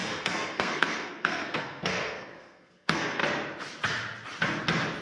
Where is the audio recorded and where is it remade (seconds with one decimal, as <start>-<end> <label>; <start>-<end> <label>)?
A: 0.0-3.2 remade; 3.2-5.0 recorded